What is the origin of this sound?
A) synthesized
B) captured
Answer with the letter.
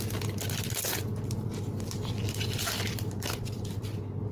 B